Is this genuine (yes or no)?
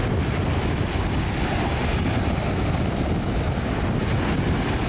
yes